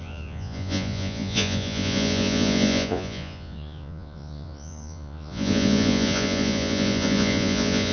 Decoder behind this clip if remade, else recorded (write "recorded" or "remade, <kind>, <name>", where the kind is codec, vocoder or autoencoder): remade, vocoder, Vocos